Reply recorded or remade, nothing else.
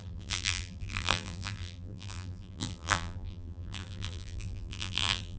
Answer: remade